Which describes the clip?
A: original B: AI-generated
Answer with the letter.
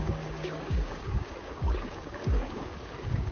B